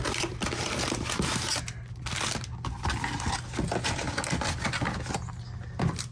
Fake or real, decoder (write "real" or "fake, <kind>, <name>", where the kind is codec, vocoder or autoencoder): real